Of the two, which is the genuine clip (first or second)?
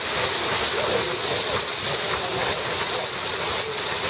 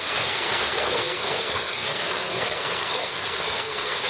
first